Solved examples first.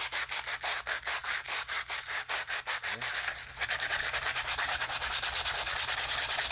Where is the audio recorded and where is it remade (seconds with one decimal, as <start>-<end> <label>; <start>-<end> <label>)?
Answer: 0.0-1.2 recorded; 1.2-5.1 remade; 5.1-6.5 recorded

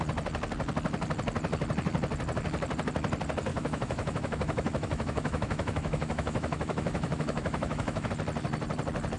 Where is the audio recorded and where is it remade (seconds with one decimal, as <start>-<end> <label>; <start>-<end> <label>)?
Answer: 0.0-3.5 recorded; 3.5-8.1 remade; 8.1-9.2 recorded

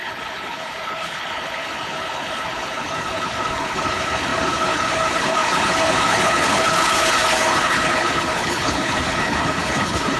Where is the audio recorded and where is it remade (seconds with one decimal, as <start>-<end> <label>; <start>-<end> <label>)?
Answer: 0.0-10.2 remade

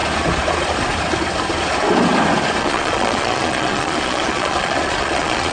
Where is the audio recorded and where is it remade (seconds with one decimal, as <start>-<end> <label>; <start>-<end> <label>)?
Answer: 0.0-2.6 recorded; 2.6-5.5 remade